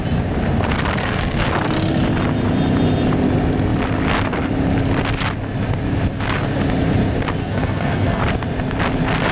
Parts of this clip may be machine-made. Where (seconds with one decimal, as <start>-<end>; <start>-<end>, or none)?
1.0-1.5; 7.4-8.2